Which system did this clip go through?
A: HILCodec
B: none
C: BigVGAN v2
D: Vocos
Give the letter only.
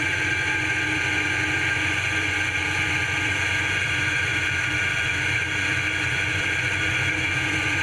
D